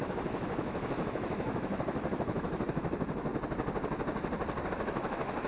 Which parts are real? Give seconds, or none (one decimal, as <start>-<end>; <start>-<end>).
3.3-4.7